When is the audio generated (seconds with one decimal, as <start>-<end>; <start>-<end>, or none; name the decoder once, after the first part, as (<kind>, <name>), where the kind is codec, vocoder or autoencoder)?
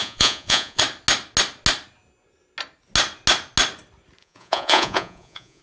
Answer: 0.0-0.8 (vocoder, Vocos); 4.2-5.6